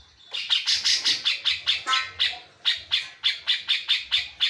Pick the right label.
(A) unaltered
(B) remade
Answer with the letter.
A